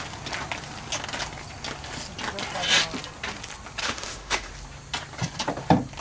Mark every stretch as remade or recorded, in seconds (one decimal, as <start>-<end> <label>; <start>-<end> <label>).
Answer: 0.0-3.8 recorded; 3.8-4.5 remade; 4.5-6.0 recorded